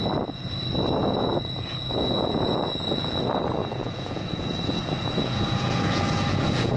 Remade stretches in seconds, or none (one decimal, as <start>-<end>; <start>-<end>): 1.0-3.2; 3.6-6.8